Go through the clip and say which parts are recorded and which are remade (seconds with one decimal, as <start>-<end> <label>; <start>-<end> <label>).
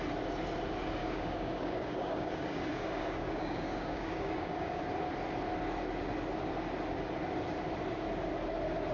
0.0-1.0 recorded; 1.0-4.8 remade; 4.8-8.9 recorded